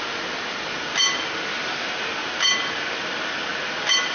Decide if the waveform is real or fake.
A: real